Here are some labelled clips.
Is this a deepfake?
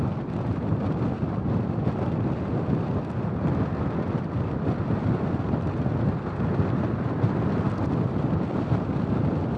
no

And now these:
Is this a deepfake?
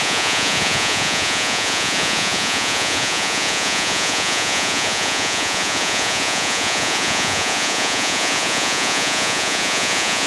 yes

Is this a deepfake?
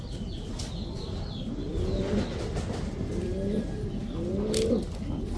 no